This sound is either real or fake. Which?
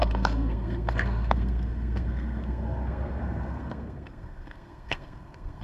fake